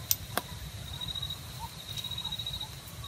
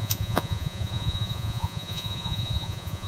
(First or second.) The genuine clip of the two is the first